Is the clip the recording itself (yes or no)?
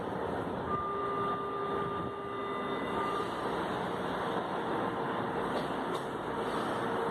yes